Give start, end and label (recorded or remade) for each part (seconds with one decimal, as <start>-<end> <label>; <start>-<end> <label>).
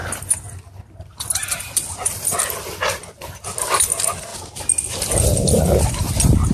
0.0-6.5 recorded